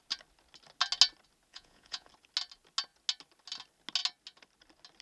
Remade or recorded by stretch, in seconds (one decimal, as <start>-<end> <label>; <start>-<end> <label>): 0.0-1.5 recorded; 1.5-2.1 remade; 2.1-5.0 recorded